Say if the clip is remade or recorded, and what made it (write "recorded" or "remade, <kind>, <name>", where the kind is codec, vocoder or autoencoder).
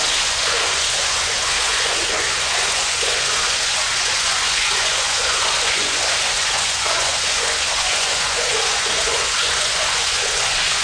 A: remade, vocoder, Vocos